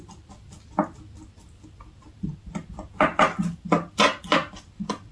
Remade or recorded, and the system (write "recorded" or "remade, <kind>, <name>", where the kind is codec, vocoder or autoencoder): recorded